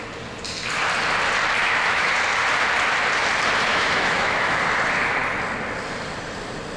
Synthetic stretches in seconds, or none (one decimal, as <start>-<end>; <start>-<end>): 1.6-2.1; 3.7-4.6